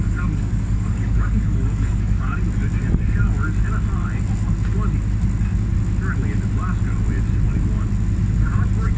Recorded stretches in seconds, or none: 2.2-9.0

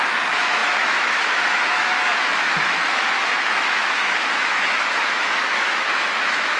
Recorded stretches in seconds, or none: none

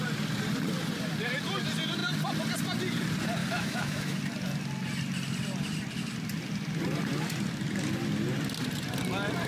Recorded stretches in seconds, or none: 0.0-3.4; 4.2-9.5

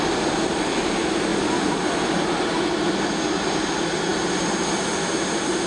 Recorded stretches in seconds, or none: 0.0-5.7

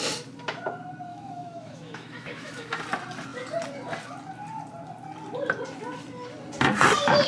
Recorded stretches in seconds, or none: 0.0-1.1; 2.7-7.3